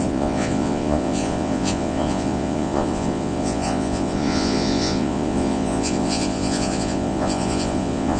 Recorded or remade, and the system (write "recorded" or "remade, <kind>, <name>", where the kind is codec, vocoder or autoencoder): remade, vocoder, Vocos